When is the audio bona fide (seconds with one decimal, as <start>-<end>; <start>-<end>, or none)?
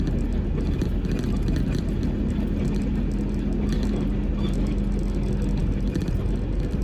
0.0-6.8